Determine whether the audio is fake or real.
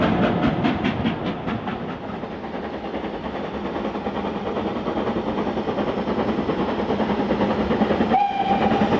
real